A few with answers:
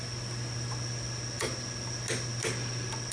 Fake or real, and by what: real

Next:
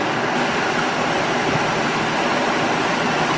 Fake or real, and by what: real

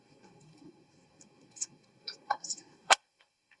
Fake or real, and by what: fake, codec, SNAC